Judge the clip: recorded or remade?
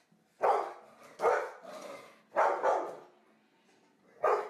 recorded